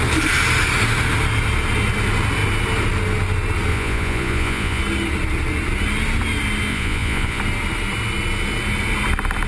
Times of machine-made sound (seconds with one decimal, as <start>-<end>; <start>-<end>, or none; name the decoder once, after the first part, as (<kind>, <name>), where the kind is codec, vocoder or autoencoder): 3.7-4.8 (vocoder, Vocos); 6.7-7.4